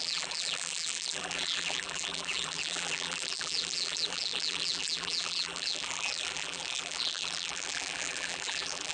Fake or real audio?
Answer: fake